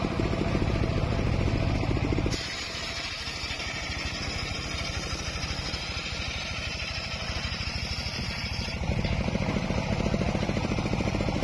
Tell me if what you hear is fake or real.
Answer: fake